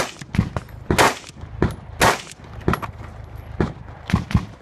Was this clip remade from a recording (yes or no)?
no